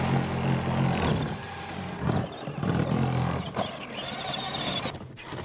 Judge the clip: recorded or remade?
recorded